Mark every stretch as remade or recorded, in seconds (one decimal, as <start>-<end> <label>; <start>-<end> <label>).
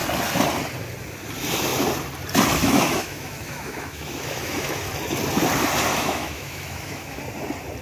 0.0-2.6 recorded; 2.6-4.9 remade; 4.9-5.9 recorded; 5.9-7.2 remade; 7.2-7.8 recorded